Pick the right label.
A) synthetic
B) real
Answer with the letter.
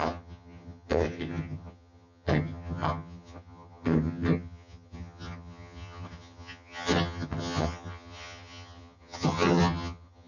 A